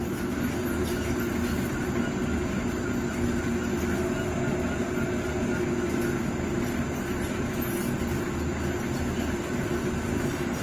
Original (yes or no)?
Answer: yes